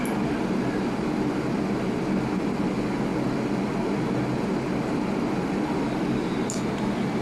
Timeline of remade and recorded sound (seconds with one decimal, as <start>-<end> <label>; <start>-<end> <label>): 0.0-7.2 recorded